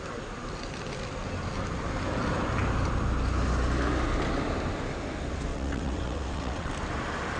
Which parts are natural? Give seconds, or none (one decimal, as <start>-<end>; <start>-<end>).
0.0-5.5; 6.7-7.4